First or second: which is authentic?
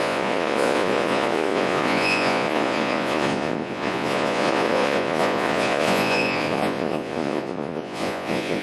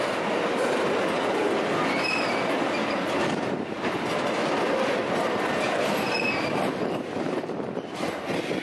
second